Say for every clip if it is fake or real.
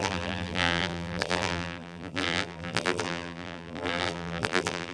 fake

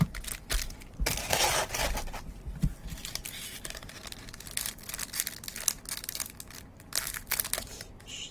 real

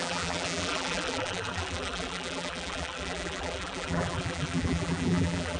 fake